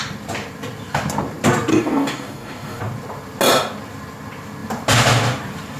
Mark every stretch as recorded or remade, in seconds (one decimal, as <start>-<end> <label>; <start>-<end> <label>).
0.0-1.7 recorded; 1.7-2.8 remade; 2.8-5.8 recorded